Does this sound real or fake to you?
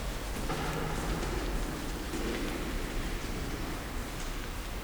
real